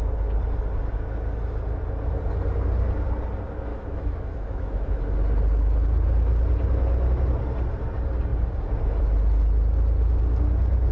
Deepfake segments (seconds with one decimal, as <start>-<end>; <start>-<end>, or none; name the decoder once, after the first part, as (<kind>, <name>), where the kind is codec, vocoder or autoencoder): 3.7-5.0 (autoencoder, DAC-VAE)